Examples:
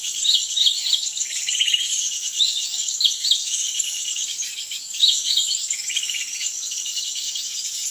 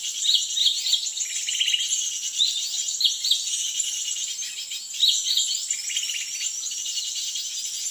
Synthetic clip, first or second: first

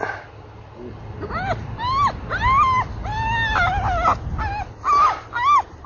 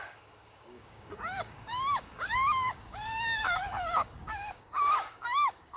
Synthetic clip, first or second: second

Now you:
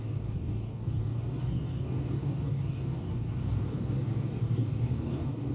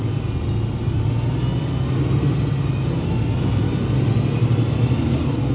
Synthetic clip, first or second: first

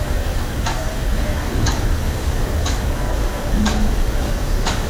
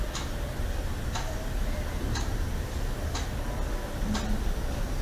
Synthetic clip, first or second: first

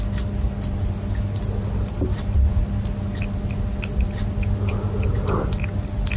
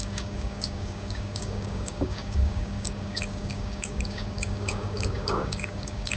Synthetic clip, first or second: second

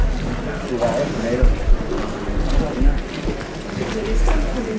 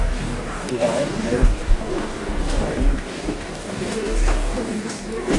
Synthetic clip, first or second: second